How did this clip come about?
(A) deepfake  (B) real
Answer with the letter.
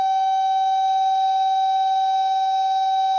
A